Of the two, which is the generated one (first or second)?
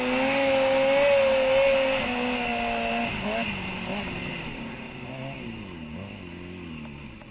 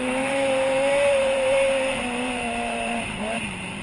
second